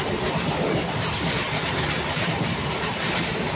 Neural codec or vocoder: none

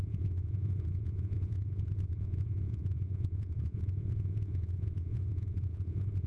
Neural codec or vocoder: vocoder, Vocos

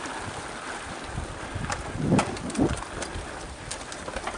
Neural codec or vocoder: none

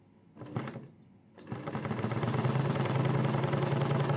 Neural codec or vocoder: none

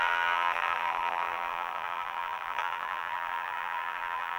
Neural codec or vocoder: vocoder, BigVGAN v2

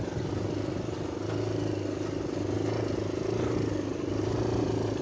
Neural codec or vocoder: none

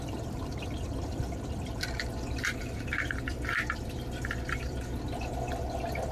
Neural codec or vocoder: none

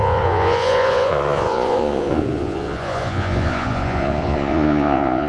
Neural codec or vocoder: vocoder, Vocos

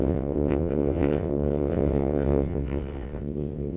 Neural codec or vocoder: vocoder, WaveNeXt